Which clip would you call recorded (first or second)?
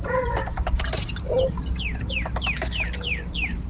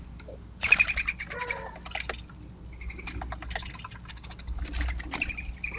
second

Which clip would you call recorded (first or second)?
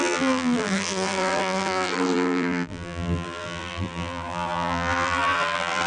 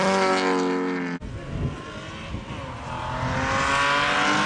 second